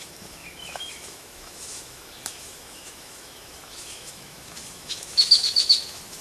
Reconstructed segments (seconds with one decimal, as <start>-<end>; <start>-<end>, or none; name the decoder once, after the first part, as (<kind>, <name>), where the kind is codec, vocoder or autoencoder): 0.0-6.2 (autoencoder, DAC-VAE)